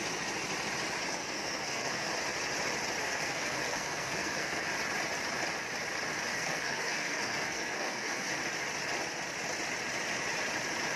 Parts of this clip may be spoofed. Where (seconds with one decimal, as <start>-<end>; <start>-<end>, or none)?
1.2-2.1; 3.0-4.7; 6.3-8.3